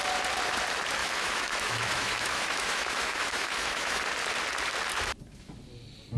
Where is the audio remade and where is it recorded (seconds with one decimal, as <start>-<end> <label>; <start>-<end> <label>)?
0.0-1.0 recorded; 1.0-4.0 remade; 4.0-6.2 recorded

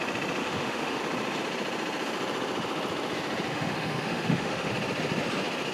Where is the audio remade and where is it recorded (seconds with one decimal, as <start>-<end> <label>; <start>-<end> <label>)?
0.0-0.4 recorded; 0.4-1.0 remade; 1.0-3.5 recorded; 3.5-4.7 remade; 4.7-5.7 recorded

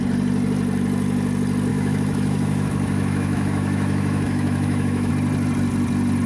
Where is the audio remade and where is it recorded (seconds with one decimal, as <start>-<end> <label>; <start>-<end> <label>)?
0.0-1.7 recorded; 1.7-5.1 remade; 5.1-6.3 recorded

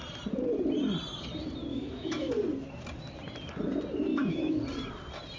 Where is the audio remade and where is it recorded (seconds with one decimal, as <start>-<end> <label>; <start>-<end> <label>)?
0.0-1.7 recorded; 1.7-2.3 remade; 2.3-4.1 recorded; 4.1-4.6 remade; 4.6-5.4 recorded